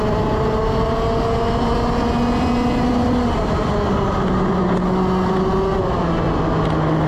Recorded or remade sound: recorded